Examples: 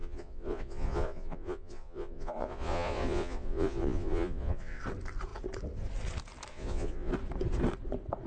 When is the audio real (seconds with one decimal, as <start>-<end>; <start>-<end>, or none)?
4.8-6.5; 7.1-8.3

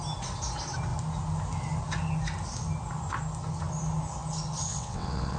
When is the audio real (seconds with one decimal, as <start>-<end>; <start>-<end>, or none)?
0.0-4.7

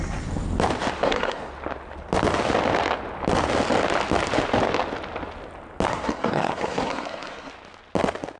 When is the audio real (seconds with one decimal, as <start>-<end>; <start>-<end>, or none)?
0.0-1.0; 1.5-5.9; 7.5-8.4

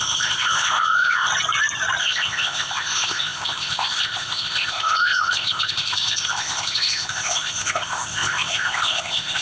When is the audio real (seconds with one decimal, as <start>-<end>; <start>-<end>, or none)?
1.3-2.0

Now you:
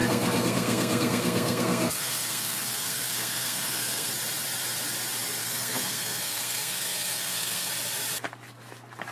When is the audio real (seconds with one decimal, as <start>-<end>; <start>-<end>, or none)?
4.1-5.4; 7.7-9.1